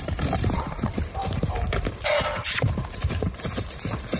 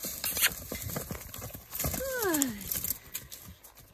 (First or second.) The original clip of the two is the second